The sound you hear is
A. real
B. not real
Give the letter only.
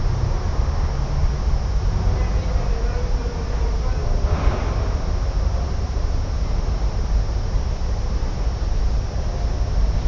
A